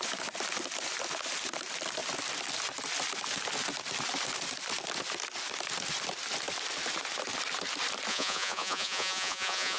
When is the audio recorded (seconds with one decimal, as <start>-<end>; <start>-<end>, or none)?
0.0-8.1